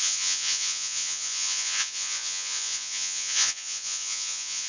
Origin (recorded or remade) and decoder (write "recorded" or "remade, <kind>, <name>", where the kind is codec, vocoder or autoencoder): remade, vocoder, Vocos